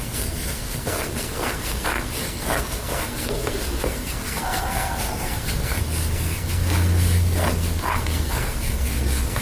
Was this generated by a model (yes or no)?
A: yes